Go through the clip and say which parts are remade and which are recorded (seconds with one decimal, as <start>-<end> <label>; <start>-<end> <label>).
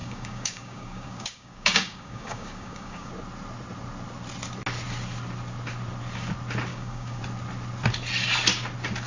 0.0-3.1 remade; 3.1-6.7 recorded; 6.7-7.2 remade; 7.2-9.1 recorded